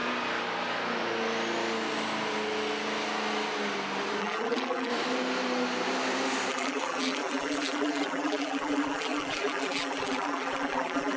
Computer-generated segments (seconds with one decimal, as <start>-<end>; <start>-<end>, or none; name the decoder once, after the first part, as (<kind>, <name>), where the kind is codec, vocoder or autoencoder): 4.2-4.9 (vocoder, BigVGAN v2); 6.5-11.2